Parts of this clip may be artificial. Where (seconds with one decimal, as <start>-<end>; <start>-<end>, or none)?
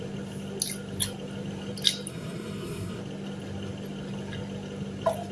2.1-3.0